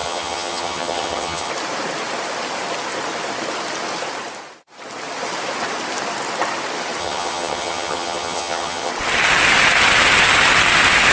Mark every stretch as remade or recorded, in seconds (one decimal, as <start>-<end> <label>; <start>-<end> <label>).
0.0-1.5 remade; 1.5-7.0 recorded; 7.0-8.9 remade; 8.9-11.1 recorded